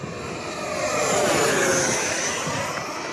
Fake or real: real